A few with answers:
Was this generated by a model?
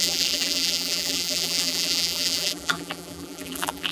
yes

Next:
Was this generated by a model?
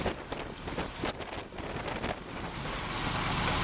no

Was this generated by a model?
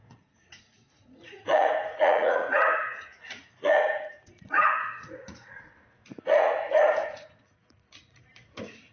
yes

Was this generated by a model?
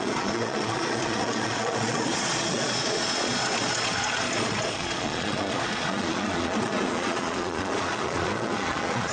yes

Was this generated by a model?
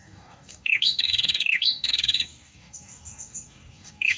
yes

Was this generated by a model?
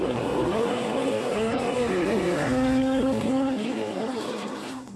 yes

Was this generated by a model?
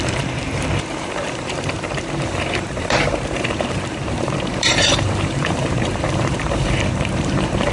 yes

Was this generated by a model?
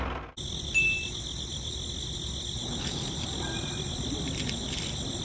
no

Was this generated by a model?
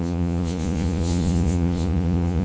yes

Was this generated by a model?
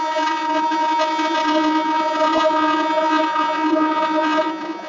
yes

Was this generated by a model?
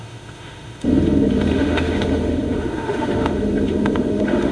yes